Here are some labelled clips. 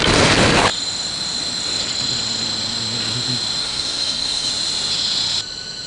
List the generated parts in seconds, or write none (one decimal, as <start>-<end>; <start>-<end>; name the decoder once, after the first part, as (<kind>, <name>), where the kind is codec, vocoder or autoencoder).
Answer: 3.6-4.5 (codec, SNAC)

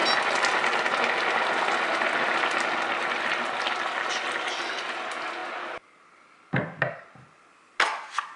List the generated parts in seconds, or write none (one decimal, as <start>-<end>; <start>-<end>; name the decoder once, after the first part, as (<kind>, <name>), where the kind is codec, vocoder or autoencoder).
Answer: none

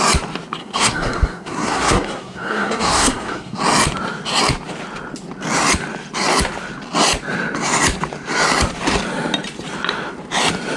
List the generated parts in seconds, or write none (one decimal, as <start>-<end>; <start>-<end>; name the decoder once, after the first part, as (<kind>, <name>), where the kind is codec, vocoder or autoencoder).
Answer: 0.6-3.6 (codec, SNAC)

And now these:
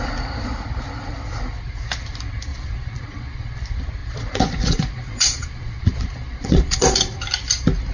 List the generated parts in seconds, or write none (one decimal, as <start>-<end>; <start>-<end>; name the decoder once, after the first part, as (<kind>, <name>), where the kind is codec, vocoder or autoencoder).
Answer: 2.5-3.6 (vocoder, Vocos); 4.0-7.2

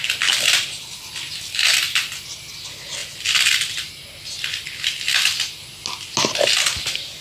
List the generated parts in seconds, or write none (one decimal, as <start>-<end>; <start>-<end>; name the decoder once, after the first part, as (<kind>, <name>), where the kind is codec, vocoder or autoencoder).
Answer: none

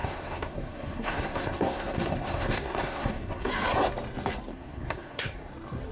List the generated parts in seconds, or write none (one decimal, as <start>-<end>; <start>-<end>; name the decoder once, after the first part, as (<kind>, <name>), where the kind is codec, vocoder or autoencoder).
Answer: 0.0-3.5 (codec, SNAC); 4.5-5.5